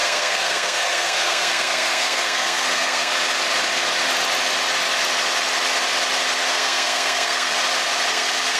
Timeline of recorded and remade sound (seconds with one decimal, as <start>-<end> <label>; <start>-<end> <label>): 0.0-3.1 remade; 3.1-6.5 recorded; 6.5-7.5 remade; 7.5-8.1 recorded; 8.1-8.6 remade